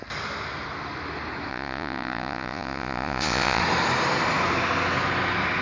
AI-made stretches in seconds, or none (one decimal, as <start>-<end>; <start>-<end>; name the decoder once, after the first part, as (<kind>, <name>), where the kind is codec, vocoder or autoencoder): 1.5-3.6 (vocoder, Vocos)